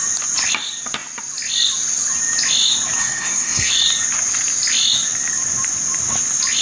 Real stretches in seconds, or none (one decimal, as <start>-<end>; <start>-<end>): 0.0-3.0; 3.7-6.6